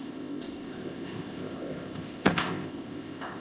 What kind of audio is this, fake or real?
fake